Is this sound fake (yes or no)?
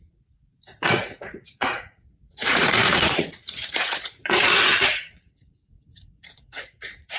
yes